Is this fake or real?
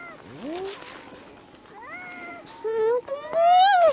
real